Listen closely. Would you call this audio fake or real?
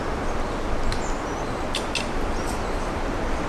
real